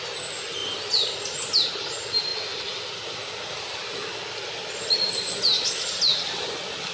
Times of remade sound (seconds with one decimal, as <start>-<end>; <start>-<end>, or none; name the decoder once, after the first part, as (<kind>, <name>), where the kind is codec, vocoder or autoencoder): none